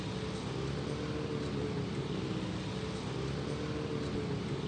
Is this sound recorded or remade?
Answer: recorded